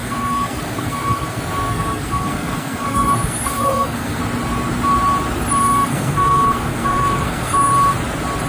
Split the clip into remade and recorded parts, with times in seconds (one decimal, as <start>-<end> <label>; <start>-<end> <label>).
0.0-4.2 remade; 4.2-5.6 recorded; 5.6-7.7 remade; 7.7-8.5 recorded